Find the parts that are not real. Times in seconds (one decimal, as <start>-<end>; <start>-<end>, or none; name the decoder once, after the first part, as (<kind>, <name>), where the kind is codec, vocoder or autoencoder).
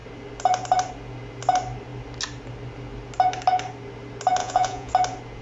4.4-4.9 (vocoder, Vocos)